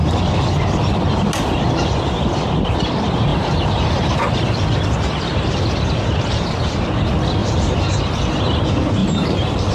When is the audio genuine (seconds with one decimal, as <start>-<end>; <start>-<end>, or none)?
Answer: 0.0-3.3; 4.2-9.0

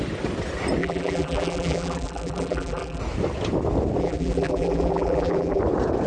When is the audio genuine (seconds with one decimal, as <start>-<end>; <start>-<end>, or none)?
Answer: 0.0-0.8; 3.0-4.0; 5.6-6.1

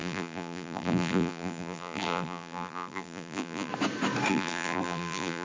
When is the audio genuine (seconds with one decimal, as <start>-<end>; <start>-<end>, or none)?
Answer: 3.7-4.3

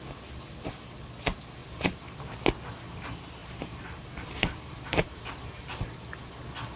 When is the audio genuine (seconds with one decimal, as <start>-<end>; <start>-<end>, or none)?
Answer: 0.0-1.6; 2.3-3.4; 5.8-6.8

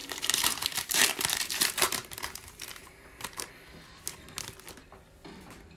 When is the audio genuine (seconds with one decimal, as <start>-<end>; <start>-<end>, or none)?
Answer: 3.5-5.8